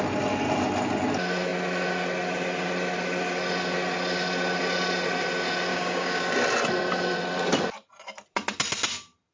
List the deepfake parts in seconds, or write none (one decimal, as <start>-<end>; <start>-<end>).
5.7-6.3